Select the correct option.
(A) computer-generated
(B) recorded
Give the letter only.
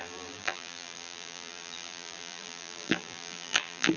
A